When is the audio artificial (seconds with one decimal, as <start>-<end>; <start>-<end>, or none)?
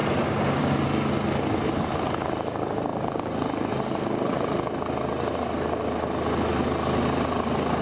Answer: none